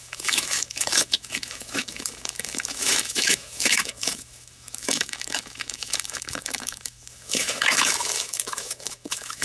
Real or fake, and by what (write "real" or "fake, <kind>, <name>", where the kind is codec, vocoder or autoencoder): fake, autoencoder, DAC-VAE